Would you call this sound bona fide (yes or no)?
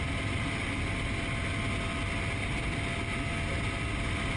yes